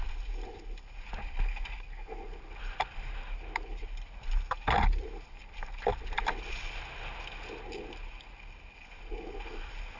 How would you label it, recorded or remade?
recorded